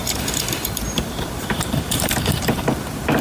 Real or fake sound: fake